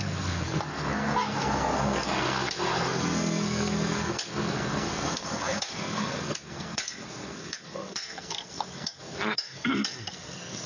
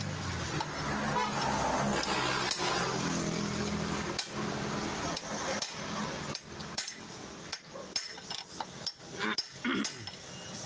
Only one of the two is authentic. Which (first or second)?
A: second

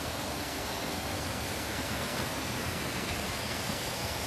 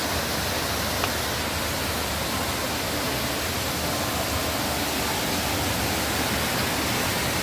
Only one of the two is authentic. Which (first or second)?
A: second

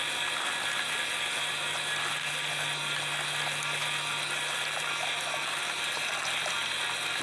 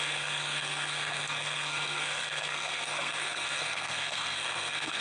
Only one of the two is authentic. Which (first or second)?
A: first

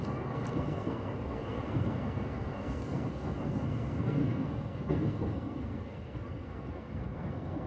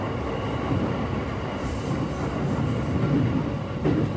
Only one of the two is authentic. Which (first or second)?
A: second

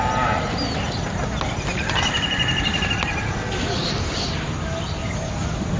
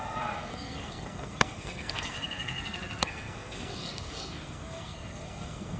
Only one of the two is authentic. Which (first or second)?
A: first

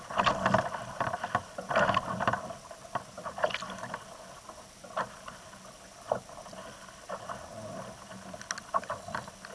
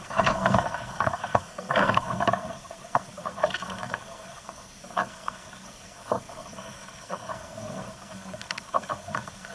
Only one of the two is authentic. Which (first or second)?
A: first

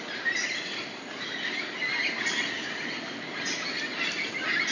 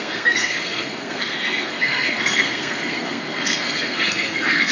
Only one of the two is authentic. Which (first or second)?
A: first